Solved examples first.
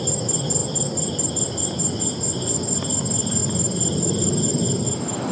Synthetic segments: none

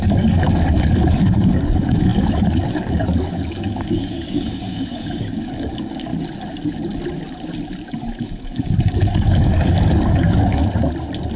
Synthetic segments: 0.0-6.1; 7.9-10.6

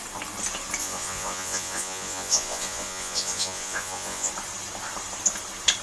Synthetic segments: 0.8-4.3

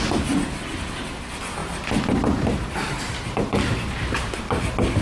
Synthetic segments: 1.6-4.6

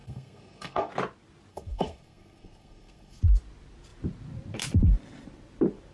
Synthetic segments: 0.0-0.9; 1.5-3.2

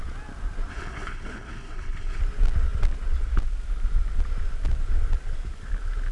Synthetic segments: 0.7-2.2

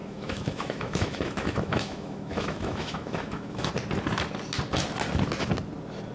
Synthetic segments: 0.0-3.7